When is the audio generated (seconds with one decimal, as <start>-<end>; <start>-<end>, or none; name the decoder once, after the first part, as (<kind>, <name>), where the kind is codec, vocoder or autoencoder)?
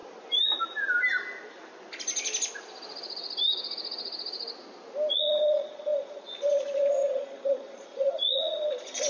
5.1-9.1 (vocoder, Vocos)